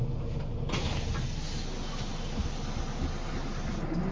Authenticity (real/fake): real